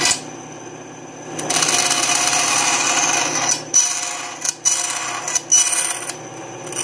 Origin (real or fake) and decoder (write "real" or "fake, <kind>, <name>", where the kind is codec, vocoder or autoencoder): real